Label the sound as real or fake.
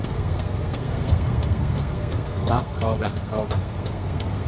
fake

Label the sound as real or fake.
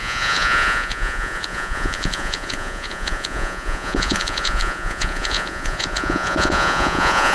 fake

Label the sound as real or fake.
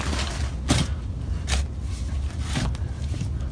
real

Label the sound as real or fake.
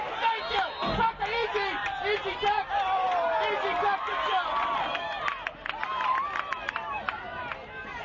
real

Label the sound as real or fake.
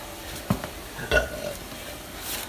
real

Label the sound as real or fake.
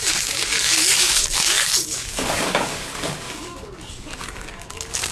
fake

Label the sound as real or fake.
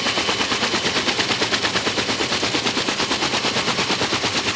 real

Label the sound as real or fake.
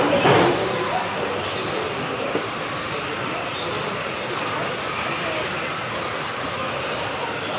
real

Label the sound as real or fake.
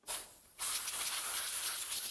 real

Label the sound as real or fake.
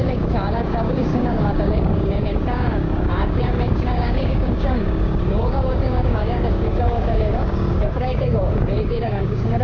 fake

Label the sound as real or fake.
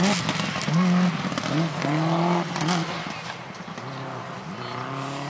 real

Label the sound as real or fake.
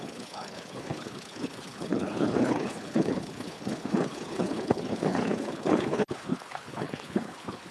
fake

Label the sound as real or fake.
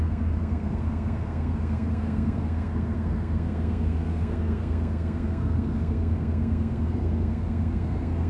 fake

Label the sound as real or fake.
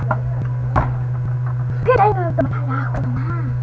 real